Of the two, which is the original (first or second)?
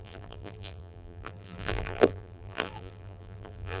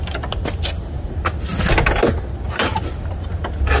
second